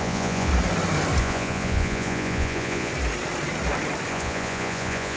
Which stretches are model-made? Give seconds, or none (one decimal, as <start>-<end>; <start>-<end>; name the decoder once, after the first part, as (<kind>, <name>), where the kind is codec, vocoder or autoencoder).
0.0-0.5 (vocoder, Vocos); 1.2-2.9; 4.1-5.2